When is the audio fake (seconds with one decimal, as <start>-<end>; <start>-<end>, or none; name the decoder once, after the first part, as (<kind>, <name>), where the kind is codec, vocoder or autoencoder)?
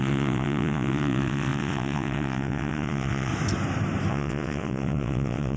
0.0-3.3 (vocoder, WaveNeXt); 4.1-5.6